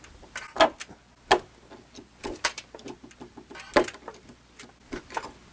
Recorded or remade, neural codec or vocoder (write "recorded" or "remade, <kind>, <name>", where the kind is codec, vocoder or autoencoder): recorded